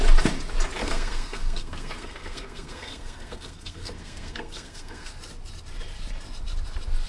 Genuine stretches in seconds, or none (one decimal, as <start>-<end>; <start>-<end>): 0.0-0.8; 5.1-7.1